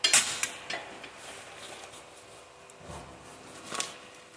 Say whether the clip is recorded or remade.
recorded